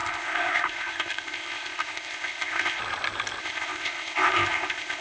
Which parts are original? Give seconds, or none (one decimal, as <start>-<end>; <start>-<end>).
2.8-3.4